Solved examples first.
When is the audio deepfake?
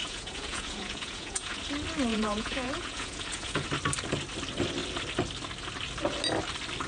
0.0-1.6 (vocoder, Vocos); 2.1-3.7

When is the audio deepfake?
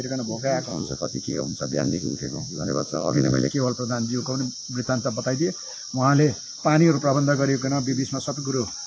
0.7-3.5 (vocoder, Vocos)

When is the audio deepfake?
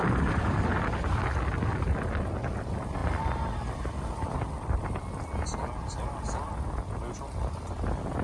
0.0-0.7 (vocoder, BigVGAN v2); 3.0-4.8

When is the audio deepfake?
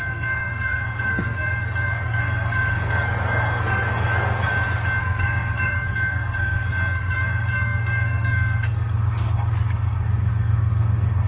0.0-4.5 (codec, SNAC); 5.0-11.3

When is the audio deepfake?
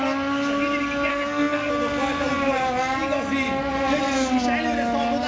1.1-1.7 (codec, SNAC)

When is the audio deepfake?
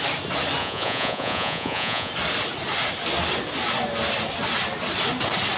0.6-2.1 (vocoder, Vocos)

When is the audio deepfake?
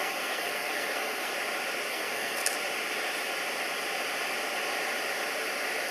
0.0-1.3 (codec, SNAC); 1.9-2.4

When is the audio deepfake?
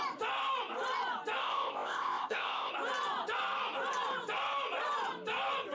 1.4-2.7 (codec, ZipCodec)